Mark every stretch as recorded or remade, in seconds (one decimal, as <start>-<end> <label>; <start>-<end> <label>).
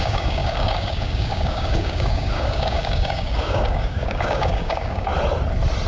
0.0-5.1 remade; 5.1-5.9 recorded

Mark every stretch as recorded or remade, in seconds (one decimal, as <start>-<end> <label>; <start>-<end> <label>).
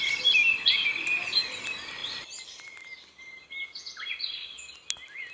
0.0-5.3 recorded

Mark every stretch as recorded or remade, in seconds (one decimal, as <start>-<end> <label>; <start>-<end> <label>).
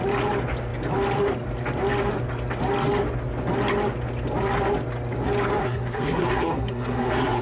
0.0-5.6 recorded; 5.6-7.4 remade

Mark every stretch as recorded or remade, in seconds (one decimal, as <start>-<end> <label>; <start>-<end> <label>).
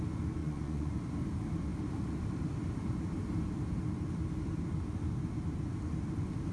0.0-0.4 recorded; 0.4-0.9 remade; 0.9-6.5 recorded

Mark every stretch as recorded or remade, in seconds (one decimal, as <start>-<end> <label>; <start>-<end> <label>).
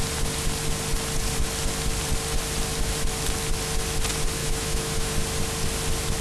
0.0-4.4 recorded; 4.4-5.1 remade; 5.1-6.2 recorded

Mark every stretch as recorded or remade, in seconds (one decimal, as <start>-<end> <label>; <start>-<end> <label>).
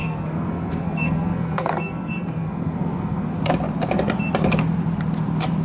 0.0-3.4 remade; 3.4-5.6 recorded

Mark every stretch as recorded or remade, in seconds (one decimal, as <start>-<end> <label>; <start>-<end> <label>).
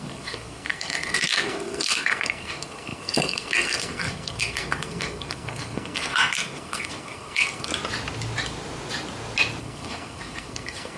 0.0-7.7 remade; 7.7-9.6 recorded; 9.6-11.0 remade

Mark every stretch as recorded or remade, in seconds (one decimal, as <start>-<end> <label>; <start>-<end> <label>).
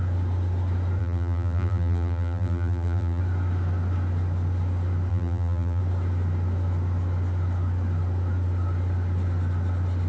0.0-1.0 recorded; 1.0-3.2 remade; 3.2-5.1 recorded; 5.1-5.8 remade; 5.8-10.1 recorded